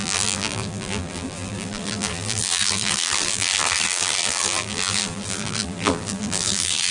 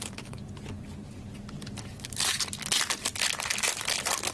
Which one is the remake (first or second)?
first